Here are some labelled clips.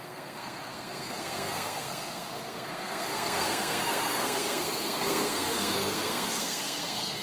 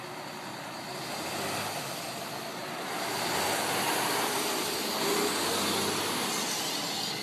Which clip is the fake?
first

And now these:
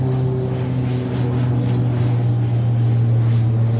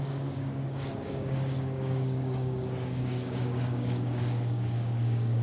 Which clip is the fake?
second